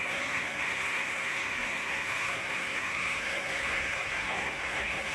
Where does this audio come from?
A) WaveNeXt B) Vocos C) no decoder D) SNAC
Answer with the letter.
D